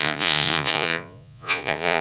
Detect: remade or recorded remade